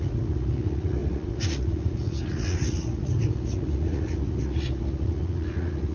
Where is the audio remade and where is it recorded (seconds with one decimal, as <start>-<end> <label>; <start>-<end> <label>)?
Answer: 0.0-5.9 remade